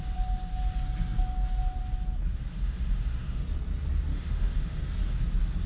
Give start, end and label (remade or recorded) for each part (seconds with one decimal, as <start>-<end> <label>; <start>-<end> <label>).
0.0-2.5 recorded; 2.5-3.4 remade; 3.4-4.1 recorded; 4.1-4.8 remade; 4.8-5.7 recorded

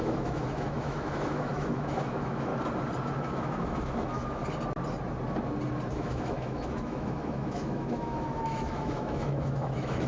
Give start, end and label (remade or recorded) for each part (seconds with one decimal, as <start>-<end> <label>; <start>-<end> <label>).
0.0-2.5 remade; 2.5-3.2 recorded; 3.2-4.4 remade; 4.4-5.9 recorded; 5.9-10.1 remade

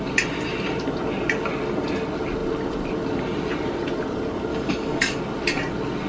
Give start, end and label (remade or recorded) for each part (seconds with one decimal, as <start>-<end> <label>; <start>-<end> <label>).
0.0-4.5 recorded; 4.5-5.2 remade; 5.2-6.1 recorded

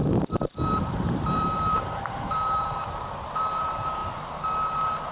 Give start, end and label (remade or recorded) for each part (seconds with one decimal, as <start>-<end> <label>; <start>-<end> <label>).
0.0-0.8 recorded; 0.8-4.0 remade; 4.0-5.1 recorded

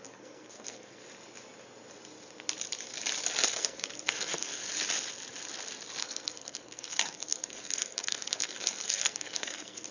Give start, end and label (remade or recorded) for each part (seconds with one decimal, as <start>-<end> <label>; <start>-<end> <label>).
0.0-1.0 remade; 1.0-3.5 recorded; 3.5-4.6 remade; 4.6-6.0 recorded; 6.0-9.9 remade